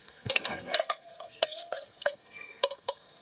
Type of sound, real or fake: fake